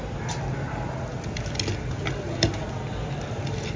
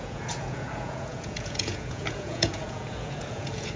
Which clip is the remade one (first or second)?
second